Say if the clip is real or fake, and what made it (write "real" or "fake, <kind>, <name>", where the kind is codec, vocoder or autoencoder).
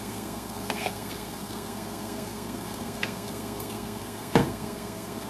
fake, codec, SNAC